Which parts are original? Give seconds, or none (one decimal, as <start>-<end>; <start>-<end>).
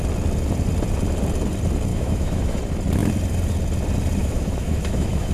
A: 0.0-1.9; 2.6-4.2